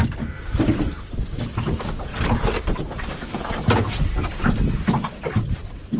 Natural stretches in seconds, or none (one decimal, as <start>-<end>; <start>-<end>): 0.0-2.1